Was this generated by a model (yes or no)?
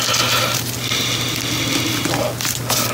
no